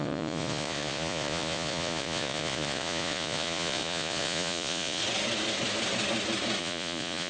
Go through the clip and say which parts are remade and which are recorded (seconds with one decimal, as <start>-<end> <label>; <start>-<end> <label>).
0.0-5.0 remade; 5.0-6.6 recorded; 6.6-7.3 remade